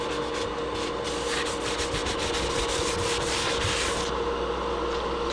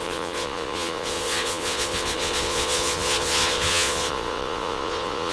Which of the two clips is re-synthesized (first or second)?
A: second